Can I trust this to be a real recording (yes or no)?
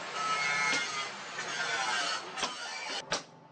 yes